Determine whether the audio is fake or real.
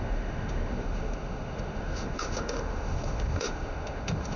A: fake